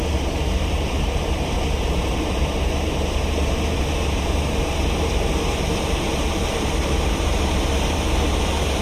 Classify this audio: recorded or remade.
remade